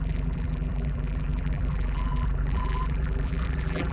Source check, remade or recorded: remade